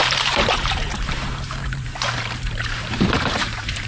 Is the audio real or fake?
fake